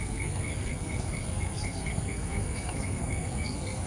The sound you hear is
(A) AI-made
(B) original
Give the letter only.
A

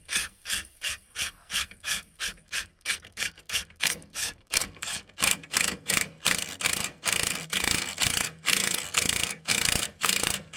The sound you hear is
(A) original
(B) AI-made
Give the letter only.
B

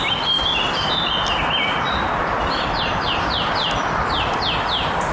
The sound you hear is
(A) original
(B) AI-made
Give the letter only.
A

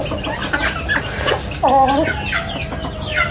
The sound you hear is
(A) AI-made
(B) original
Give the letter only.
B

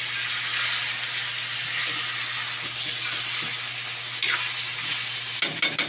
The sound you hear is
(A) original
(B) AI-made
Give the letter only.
A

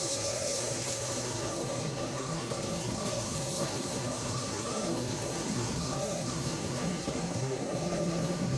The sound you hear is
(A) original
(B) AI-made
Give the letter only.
B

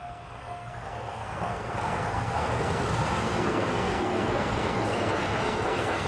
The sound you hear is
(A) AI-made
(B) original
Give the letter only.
A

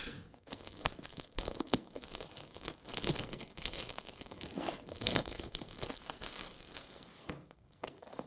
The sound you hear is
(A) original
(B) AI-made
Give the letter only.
B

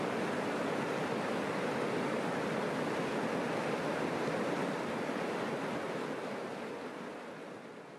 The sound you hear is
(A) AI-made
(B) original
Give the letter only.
B